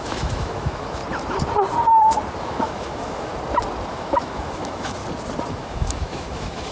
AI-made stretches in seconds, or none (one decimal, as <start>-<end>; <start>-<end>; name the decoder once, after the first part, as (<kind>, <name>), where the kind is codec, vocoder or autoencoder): 0.0-1.0 (autoencoder, DAC-VAE); 2.4-3.3; 3.9-5.0; 5.5-6.7